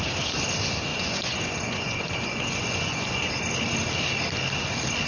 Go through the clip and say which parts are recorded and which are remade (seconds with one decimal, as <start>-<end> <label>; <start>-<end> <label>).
0.0-0.9 recorded; 0.9-3.3 remade; 3.3-5.1 recorded